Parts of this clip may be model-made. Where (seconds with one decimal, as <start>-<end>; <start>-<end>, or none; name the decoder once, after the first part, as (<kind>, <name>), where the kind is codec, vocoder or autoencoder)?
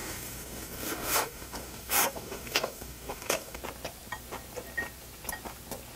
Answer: 0.0-3.6 (codec, DAC)